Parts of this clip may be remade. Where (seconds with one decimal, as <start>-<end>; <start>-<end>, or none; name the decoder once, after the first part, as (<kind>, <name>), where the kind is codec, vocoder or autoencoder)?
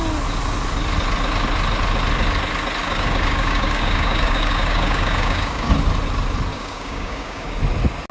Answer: 2.8-5.7 (codec, DAC); 6.5-7.6